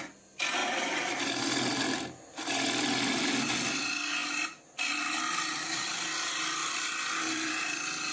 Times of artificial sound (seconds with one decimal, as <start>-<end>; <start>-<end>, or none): 0.6-1.4; 6.6-7.5